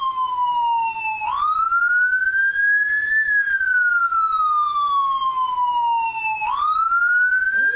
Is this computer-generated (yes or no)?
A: no